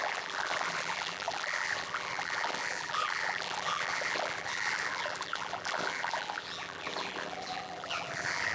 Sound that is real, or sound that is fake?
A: fake